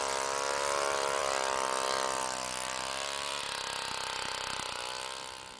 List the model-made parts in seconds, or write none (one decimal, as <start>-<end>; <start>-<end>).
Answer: none

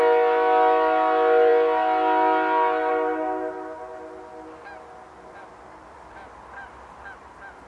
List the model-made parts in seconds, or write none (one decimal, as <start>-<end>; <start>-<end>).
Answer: none

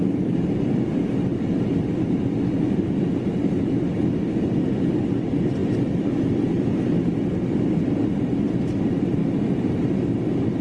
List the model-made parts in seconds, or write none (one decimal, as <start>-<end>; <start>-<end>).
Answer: none

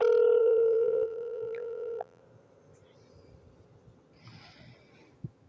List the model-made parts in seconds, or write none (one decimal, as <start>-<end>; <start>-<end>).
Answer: 0.4-2.2

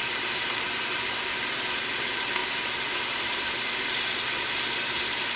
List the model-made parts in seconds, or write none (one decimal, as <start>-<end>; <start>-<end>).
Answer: none

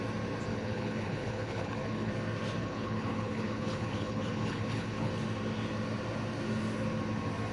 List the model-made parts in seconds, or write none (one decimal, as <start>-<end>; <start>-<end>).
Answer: 0.5-2.1; 2.6-5.1

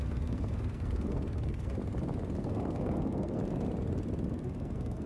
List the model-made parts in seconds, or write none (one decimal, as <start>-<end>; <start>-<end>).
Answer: 0.0-1.8; 2.4-3.4; 4.3-5.1